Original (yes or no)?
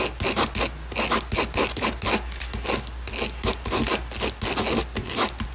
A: yes